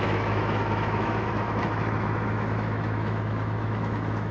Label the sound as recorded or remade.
remade